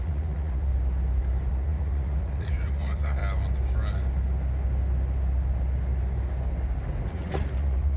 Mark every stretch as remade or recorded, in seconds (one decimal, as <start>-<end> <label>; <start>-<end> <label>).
0.0-0.7 remade; 0.7-1.5 recorded; 1.5-3.2 remade; 3.2-7.1 recorded; 7.1-8.0 remade